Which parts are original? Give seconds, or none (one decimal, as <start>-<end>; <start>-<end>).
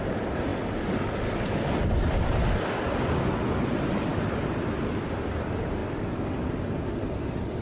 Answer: 0.0-7.6